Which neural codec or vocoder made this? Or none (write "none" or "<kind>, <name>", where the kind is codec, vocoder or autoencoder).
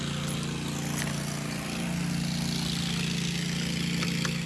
none